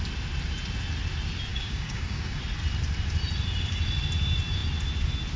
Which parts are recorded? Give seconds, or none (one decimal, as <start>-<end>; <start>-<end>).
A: 0.0-1.5; 2.4-5.4